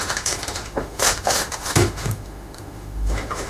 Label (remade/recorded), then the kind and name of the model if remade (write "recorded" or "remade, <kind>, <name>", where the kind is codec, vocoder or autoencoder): remade, autoencoder, DAC-VAE